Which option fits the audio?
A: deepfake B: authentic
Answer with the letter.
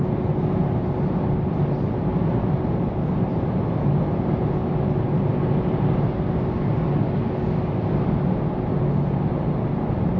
B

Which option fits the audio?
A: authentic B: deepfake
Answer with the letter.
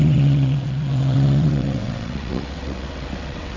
B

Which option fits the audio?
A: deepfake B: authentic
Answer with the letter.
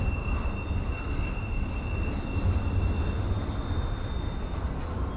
B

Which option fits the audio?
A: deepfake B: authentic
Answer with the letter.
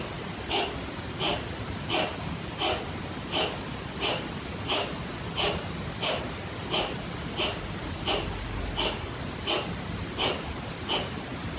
B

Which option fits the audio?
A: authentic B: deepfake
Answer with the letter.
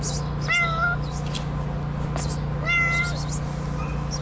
A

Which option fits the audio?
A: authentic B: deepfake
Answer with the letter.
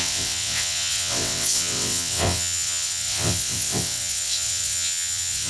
B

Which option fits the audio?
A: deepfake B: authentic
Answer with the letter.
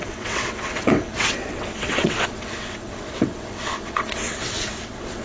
A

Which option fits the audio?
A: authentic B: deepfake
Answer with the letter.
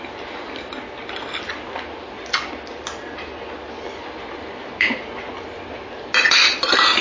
A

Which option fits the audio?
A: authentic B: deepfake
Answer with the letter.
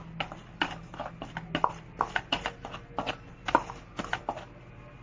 A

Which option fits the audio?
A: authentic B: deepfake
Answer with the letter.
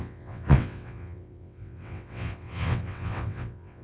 B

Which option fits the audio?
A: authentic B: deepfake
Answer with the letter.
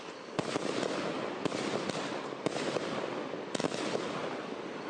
A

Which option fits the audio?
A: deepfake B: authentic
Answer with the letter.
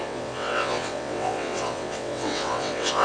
A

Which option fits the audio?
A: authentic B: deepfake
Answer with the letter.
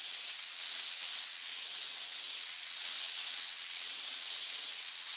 B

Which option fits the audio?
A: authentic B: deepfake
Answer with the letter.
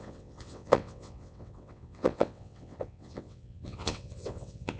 B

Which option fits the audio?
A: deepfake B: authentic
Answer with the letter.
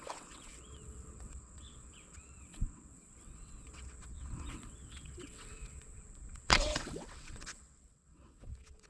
A